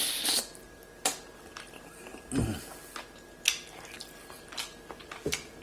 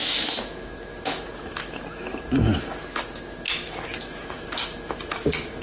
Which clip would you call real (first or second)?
first